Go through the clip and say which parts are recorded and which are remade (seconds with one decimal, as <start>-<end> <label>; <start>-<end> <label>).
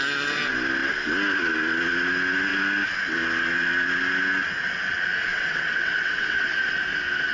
0.0-5.3 recorded; 5.3-6.5 remade; 6.5-7.3 recorded